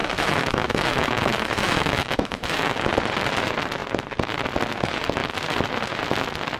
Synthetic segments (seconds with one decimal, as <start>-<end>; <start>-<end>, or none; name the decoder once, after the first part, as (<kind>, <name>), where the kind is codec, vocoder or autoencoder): 0.0-2.9 (autoencoder, DAC-VAE)